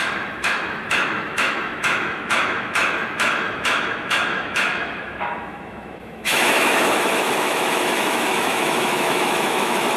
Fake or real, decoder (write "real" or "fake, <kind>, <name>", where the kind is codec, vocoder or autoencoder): fake, autoencoder, DAC-VAE